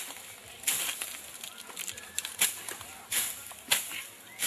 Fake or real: real